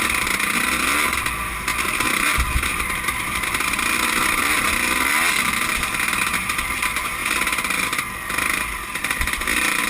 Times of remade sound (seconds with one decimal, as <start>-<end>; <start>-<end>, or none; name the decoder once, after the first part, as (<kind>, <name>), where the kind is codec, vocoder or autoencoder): 1.7-4.7 (vocoder, BigVGAN v2)

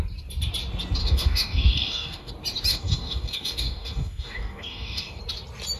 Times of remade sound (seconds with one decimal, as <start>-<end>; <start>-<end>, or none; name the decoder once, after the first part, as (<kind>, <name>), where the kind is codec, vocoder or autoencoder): 1.0-2.3 (codec, DAC); 2.7-5.2

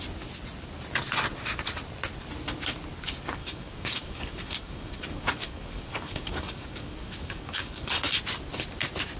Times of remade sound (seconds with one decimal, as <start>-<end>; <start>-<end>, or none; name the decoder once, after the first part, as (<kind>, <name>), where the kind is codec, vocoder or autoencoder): 3.4-8.2 (codec, DAC)

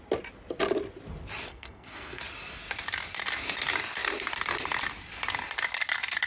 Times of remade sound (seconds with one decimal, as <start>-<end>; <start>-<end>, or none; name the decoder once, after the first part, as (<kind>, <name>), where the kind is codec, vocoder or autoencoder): 1.5-2.2 (codec, SNAC)

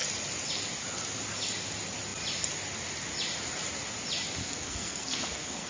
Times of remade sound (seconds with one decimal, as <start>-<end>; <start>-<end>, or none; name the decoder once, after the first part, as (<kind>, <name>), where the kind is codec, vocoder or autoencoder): 4.4-5.7 (codec, SNAC)